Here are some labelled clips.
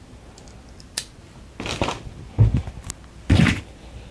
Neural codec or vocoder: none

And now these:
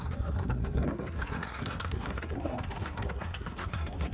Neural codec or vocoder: codec, SNAC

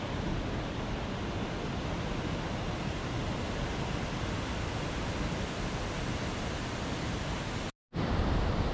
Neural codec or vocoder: none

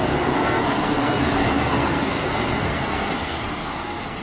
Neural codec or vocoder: codec, SNAC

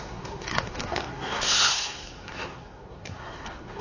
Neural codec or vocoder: codec, SNAC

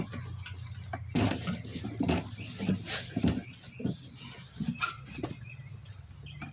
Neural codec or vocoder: none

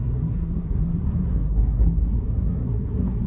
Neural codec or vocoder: codec, SNAC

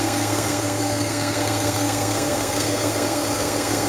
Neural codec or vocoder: codec, SNAC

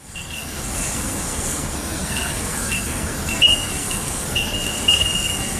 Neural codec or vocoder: codec, SNAC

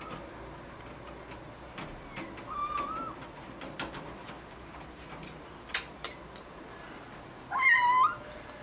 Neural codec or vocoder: none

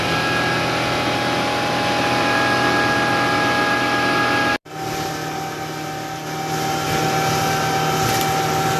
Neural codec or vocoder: none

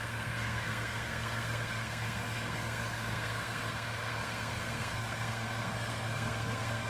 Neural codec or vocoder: codec, SNAC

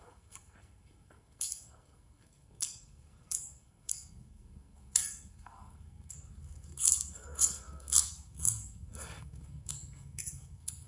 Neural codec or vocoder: codec, SNAC